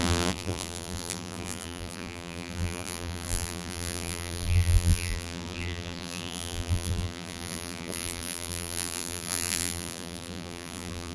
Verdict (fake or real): fake